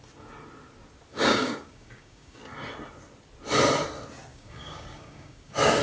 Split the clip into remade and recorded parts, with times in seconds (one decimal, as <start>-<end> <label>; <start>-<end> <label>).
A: 0.0-1.1 recorded; 1.1-2.4 remade; 2.4-4.3 recorded; 4.3-5.8 remade